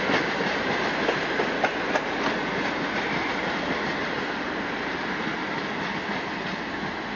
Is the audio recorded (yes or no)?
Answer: yes